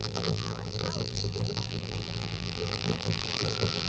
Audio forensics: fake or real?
fake